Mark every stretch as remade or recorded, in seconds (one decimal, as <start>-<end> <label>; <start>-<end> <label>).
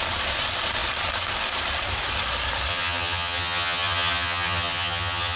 0.0-2.7 recorded; 2.7-5.4 remade